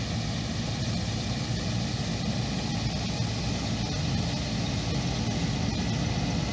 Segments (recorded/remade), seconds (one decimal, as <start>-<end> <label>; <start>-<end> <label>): 0.0-6.5 recorded